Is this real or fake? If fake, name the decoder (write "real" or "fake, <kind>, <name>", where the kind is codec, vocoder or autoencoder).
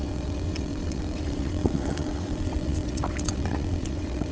fake, vocoder, WaveNeXt